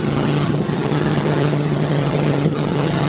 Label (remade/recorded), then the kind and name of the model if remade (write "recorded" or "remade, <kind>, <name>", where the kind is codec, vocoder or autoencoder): remade, vocoder, HiFi-GAN